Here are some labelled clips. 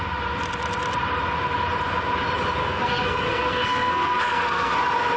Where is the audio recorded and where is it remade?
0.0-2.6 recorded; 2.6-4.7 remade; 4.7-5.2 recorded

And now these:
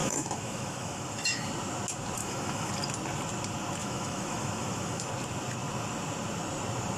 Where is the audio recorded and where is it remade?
0.0-1.5 remade; 1.5-2.2 recorded; 2.2-2.7 remade; 2.7-3.8 recorded; 3.8-5.1 remade; 5.1-7.0 recorded

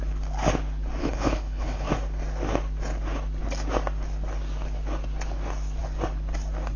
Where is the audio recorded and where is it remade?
0.0-1.0 recorded; 1.0-1.9 remade; 1.9-6.8 recorded

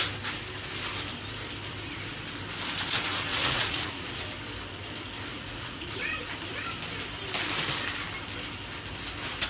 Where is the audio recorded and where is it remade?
0.0-3.3 recorded; 3.3-4.2 remade; 4.2-5.3 recorded; 5.3-6.0 remade; 6.0-9.5 recorded